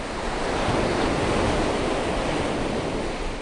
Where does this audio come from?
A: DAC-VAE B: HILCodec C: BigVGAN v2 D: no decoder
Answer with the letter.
D